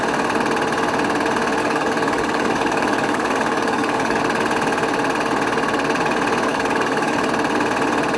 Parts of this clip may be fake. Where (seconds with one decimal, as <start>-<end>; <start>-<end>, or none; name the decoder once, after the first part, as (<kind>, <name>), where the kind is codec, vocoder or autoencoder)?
1.6-4.2 (codec, DAC); 6.5-7.3